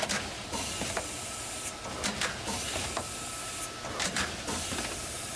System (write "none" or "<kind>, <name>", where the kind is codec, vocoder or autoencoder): vocoder, BigVGAN v2